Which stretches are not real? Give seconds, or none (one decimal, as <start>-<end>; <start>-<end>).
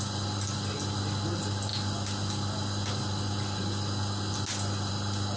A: none